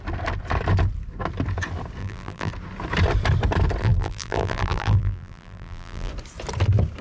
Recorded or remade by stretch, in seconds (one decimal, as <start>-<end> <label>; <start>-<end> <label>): 0.0-2.0 recorded; 2.0-2.5 remade; 2.5-3.8 recorded; 3.8-6.1 remade; 6.1-7.0 recorded